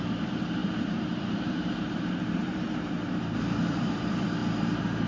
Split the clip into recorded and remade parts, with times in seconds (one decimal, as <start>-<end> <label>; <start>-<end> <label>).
0.0-4.4 remade; 4.4-5.1 recorded